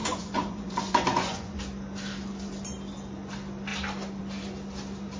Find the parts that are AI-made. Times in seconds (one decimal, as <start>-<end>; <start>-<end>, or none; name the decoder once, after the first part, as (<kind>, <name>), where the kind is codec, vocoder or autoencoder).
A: 0.0-1.6 (vocoder, Vocos)